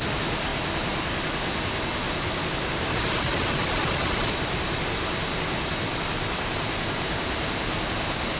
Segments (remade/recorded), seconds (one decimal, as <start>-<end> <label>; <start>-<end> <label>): 0.0-2.9 recorded; 2.9-4.3 remade; 4.3-8.4 recorded